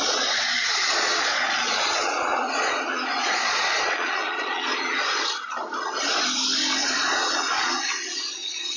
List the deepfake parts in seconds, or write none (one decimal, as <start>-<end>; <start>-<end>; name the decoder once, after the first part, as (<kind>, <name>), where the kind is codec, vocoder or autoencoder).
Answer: 0.0-5.0 (vocoder, Vocos); 6.8-8.8